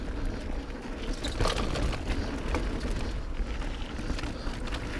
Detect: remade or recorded recorded